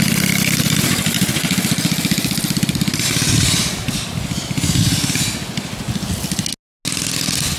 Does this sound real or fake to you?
real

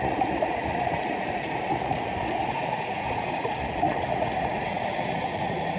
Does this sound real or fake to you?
fake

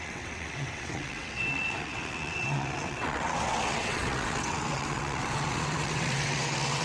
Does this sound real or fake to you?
fake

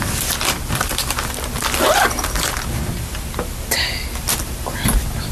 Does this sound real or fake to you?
fake